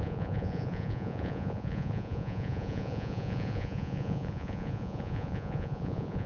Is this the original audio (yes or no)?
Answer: no